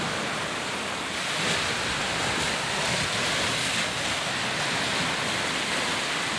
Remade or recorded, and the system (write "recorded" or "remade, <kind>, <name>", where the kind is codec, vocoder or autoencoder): recorded